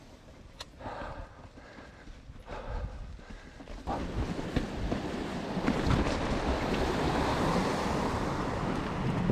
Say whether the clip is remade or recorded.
recorded